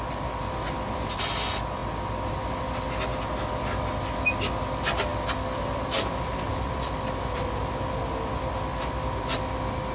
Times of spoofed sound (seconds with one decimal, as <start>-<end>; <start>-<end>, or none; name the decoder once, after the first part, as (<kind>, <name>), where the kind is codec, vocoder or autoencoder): none